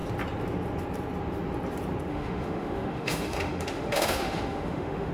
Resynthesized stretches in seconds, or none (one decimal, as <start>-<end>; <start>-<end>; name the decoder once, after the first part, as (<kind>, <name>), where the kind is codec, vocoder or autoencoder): 2.1-5.1 (autoencoder, DAC-VAE)